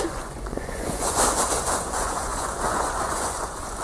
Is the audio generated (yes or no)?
yes